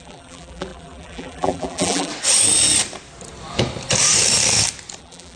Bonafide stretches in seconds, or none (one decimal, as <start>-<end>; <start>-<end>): 2.1-5.0